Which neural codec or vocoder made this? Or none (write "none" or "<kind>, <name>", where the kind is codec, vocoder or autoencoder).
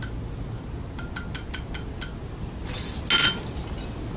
none